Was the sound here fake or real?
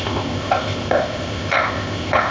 fake